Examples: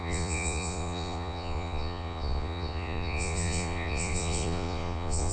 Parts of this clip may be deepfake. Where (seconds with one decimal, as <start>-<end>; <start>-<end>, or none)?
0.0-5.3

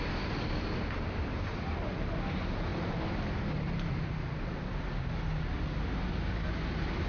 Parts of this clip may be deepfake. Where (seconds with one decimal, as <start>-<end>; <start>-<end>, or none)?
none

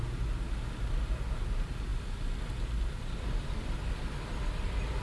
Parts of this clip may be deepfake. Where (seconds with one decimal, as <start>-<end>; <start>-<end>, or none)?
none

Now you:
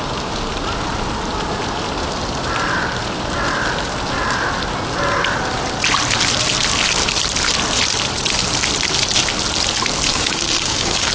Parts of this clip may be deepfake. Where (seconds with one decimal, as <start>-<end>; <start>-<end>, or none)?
10.1-11.1

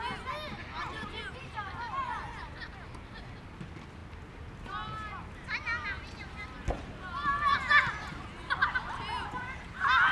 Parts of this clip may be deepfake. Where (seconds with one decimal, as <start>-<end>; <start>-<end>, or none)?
none